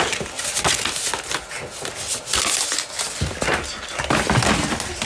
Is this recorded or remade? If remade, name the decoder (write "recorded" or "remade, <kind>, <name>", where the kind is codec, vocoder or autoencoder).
recorded